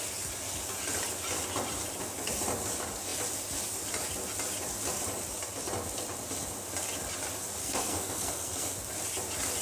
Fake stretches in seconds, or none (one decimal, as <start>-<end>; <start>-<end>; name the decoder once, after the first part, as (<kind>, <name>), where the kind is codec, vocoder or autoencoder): 7.6-8.7 (codec, SNAC)